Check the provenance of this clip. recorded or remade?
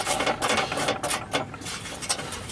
recorded